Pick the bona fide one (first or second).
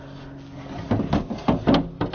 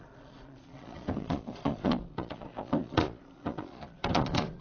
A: first